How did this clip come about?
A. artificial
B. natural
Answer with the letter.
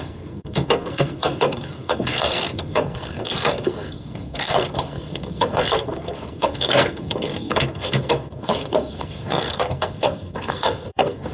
A